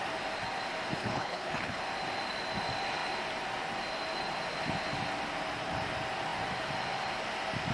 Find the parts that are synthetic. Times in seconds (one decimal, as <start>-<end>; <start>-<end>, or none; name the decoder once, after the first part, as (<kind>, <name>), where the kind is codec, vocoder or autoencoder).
1.0-1.8 (codec, HILCodec)